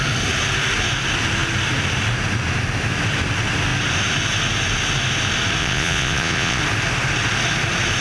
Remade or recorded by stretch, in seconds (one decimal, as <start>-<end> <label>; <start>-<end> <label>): 0.0-5.6 recorded; 5.6-6.6 remade; 6.6-8.0 recorded